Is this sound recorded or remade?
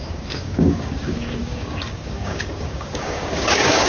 remade